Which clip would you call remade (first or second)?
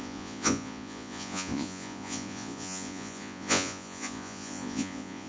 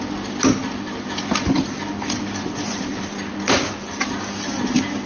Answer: first